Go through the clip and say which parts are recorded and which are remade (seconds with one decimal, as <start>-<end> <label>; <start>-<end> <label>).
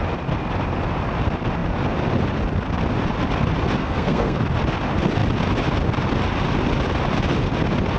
0.0-3.8 recorded; 3.8-4.4 remade; 4.4-8.0 recorded